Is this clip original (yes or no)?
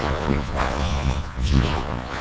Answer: no